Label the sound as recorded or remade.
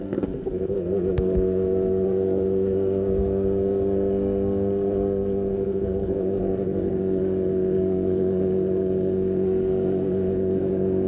remade